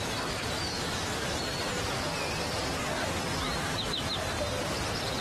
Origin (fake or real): real